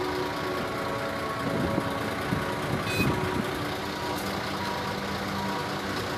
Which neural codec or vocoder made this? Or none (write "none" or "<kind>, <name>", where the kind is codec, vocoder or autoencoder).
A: none